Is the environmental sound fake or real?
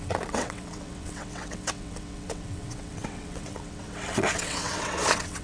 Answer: fake